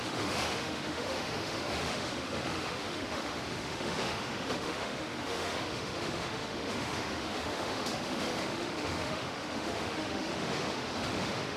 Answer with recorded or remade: remade